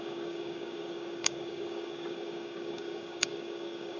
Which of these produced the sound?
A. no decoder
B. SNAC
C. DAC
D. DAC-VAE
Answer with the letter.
C